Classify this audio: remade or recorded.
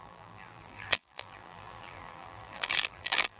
remade